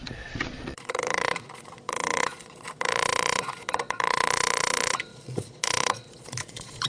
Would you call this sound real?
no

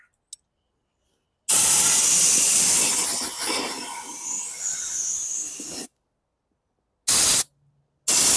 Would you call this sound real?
yes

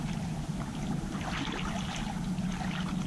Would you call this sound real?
yes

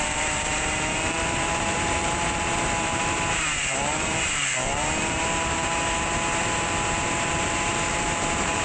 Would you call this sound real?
no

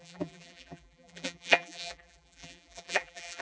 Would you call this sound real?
no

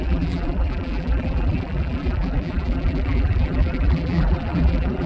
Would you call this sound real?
no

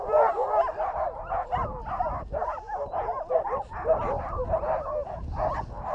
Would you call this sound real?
yes